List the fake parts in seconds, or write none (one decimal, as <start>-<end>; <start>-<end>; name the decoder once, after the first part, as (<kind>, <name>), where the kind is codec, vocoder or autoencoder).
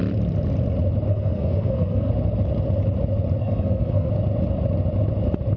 1.1-2.1 (codec, SNAC); 3.4-4.1